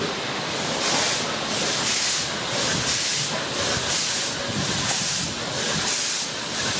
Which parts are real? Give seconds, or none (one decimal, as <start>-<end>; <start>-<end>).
0.0-6.8